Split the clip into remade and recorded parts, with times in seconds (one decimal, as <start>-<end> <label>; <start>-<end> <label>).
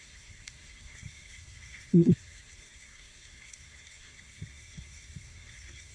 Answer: 0.0-5.9 remade